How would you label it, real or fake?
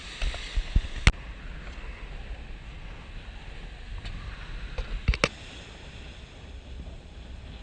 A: real